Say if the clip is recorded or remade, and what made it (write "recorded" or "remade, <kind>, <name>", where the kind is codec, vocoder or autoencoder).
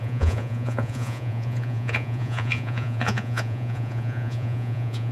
remade, vocoder, Vocos